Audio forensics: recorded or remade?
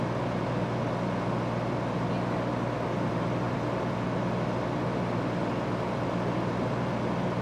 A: recorded